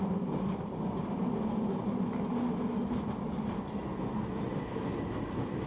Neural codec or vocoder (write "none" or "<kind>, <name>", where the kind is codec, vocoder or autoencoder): none